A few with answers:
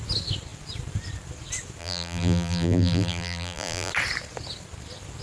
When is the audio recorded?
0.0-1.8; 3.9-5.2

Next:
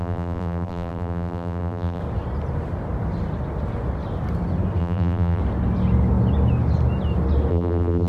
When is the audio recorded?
2.0-4.8; 5.4-7.5

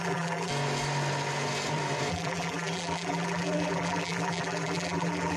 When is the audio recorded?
0.5-2.1

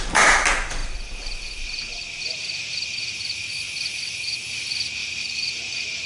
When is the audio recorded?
0.0-0.8; 4.5-5.0

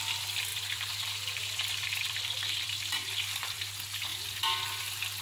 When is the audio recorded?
0.0-0.5; 3.6-5.2

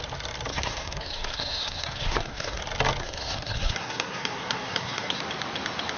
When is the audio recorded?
0.0-0.5; 2.6-3.0; 5.2-6.0

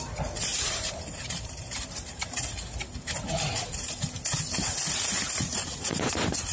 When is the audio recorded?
0.0-0.5; 2.2-5.5; 6.1-6.5

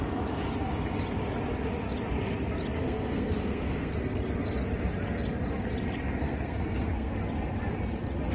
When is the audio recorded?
0.0-2.8; 3.9-6.2; 7.1-8.3